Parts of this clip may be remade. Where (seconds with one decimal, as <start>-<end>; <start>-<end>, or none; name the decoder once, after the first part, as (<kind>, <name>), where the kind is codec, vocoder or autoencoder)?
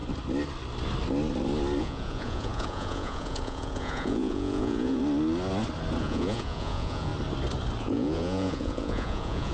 1.8-5.0 (vocoder, Vocos); 6.0-7.1; 7.8-9.5